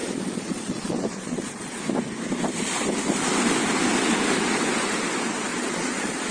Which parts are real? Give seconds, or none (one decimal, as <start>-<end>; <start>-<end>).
1.8-5.5